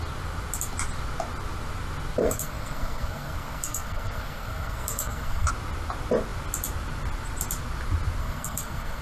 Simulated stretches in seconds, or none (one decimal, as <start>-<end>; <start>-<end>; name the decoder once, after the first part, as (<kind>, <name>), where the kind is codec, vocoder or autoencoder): 2.2-5.5 (codec, SNAC); 8.2-9.0